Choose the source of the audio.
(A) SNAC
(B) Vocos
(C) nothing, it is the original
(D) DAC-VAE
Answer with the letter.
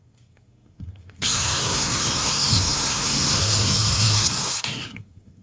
A